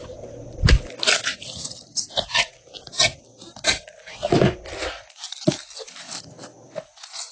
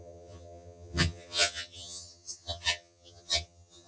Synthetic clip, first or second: second